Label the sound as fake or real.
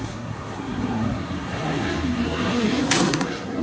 fake